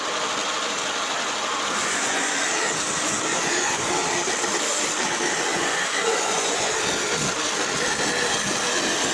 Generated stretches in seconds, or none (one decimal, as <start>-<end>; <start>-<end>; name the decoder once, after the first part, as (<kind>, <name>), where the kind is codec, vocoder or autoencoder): 1.8-2.3 (vocoder, Vocos); 3.3-3.9; 5.5-6.7